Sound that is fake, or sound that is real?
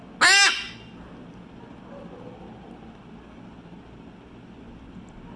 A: real